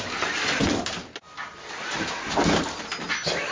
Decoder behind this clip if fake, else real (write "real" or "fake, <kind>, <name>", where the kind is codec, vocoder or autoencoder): real